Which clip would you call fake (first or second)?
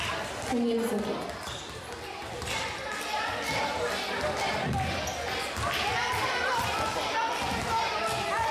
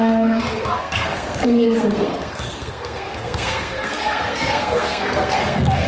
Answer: second